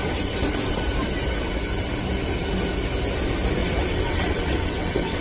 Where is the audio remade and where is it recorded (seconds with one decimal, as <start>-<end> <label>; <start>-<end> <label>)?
0.0-3.6 recorded; 3.6-5.2 remade